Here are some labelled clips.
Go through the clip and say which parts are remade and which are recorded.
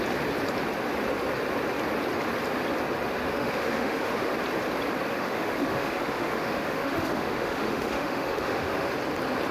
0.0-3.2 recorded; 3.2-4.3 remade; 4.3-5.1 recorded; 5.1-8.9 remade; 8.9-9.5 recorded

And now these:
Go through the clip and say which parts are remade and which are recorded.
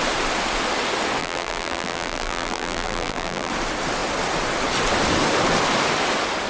0.0-1.2 recorded; 1.2-3.5 remade; 3.5-6.5 recorded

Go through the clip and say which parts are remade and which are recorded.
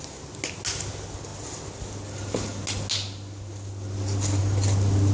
0.0-5.1 recorded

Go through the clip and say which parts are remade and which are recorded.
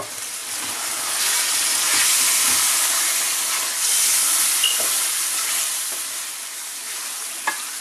0.0-7.8 recorded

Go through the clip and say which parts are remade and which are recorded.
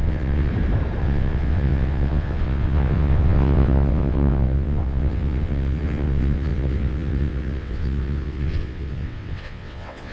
0.0-0.5 remade; 0.5-1.0 recorded; 1.0-10.1 remade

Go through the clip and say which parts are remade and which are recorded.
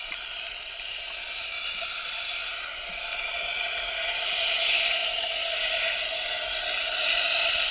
0.0-7.7 recorded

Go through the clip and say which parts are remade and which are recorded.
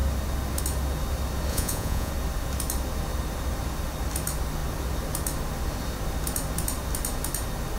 0.0-1.5 recorded; 1.5-2.1 remade; 2.1-7.8 recorded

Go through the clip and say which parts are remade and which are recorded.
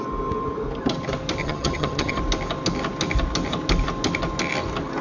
0.0-1.4 recorded; 1.4-2.2 remade; 2.2-5.0 recorded